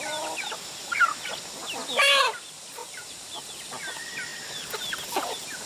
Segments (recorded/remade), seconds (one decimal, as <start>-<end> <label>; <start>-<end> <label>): 0.0-5.7 recorded